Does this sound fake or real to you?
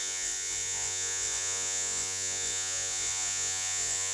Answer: fake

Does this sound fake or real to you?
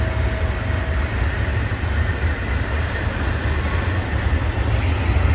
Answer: real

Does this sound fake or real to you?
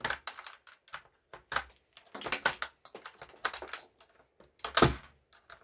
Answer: real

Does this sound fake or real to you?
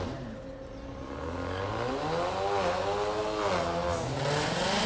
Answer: real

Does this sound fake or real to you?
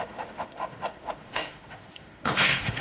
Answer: fake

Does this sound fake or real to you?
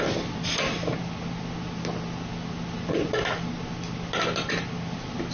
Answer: real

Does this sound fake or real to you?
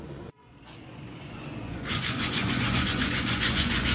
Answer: fake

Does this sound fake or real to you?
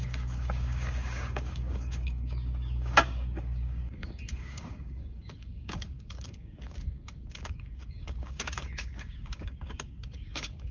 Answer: fake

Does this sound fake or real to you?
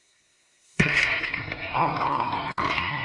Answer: fake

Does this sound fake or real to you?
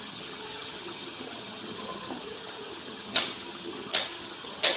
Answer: fake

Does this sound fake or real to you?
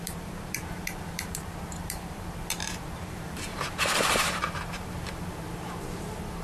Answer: fake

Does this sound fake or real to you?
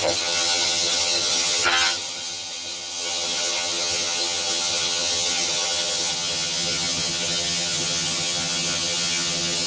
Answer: fake